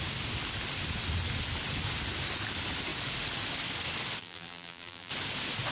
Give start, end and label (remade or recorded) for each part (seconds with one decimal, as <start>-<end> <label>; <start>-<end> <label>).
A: 0.0-4.2 recorded; 4.2-5.1 remade; 5.1-5.7 recorded